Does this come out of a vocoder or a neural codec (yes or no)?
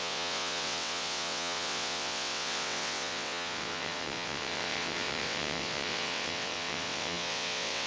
yes